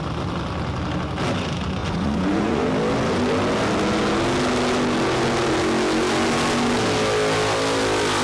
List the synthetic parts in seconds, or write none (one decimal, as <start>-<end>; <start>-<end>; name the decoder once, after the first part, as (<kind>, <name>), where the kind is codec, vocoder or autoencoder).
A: 1.8-2.7 (vocoder, Vocos)